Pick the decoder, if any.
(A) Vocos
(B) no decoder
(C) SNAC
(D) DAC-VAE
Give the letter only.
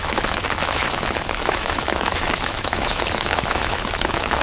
D